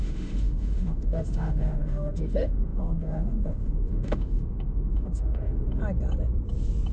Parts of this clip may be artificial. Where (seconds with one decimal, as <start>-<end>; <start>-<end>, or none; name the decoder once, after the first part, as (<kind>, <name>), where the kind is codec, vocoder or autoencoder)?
0.0-5.8 (autoencoder, DAC-VAE)